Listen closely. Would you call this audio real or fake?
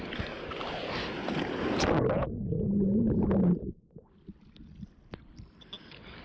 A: real